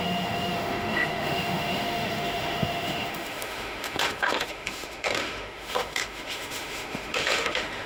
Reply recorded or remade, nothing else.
remade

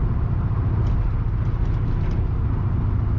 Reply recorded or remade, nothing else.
recorded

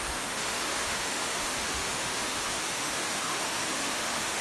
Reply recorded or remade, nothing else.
remade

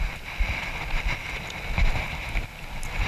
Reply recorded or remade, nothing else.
recorded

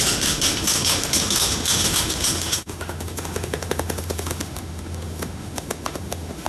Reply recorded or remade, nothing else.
remade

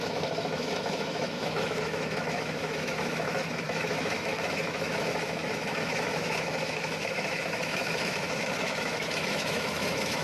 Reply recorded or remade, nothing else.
remade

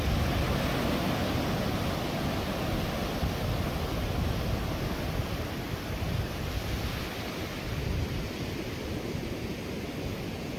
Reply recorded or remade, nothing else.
recorded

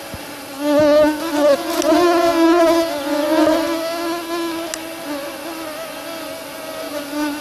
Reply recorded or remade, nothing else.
recorded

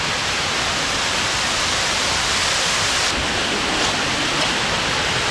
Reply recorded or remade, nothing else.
recorded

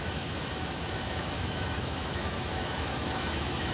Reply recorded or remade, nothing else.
remade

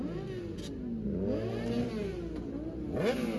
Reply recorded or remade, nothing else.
recorded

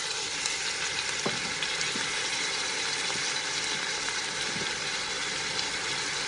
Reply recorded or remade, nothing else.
recorded